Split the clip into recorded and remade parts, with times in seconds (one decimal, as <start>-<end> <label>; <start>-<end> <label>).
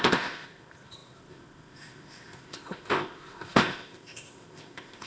0.0-5.1 remade